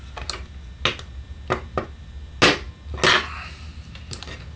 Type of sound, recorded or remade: recorded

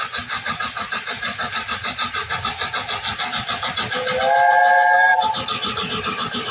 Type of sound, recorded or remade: recorded